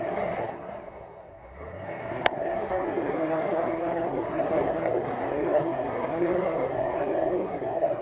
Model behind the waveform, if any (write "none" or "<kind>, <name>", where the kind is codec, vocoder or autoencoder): codec, SNAC